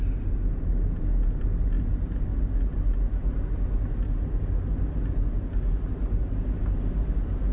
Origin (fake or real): real